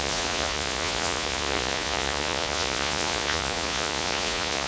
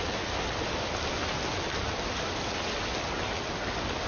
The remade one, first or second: first